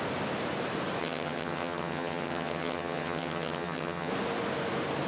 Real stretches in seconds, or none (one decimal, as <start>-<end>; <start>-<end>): 0.0-1.0; 4.1-5.1